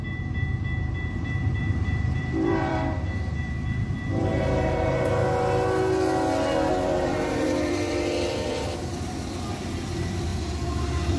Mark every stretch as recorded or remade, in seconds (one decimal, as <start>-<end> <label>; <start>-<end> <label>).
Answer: 0.0-4.3 remade; 4.3-6.7 recorded; 6.7-10.3 remade; 10.3-11.2 recorded